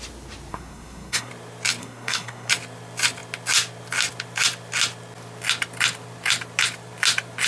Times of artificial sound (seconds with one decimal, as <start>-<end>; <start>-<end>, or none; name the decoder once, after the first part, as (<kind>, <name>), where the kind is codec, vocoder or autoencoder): 0.5-1.3 (codec, SNAC); 1.8-2.5